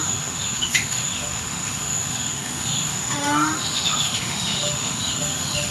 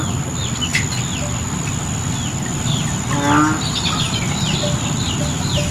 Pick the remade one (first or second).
first